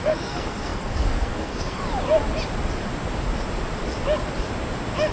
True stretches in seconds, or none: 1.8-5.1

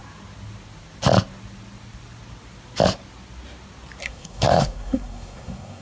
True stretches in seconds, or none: 0.0-4.0

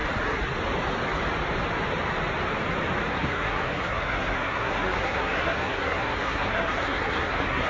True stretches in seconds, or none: 0.0-3.1

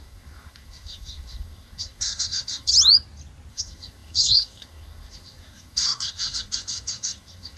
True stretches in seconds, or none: 2.7-3.5

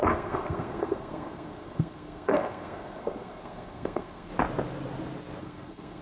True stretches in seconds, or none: 4.3-5.4

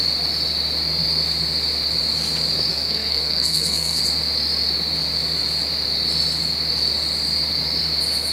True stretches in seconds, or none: 0.0-2.7; 4.0-8.3